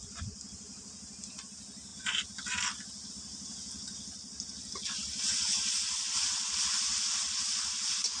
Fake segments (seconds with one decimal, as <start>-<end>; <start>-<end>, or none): none